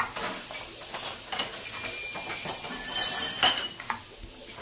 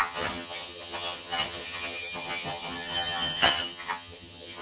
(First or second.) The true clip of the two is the first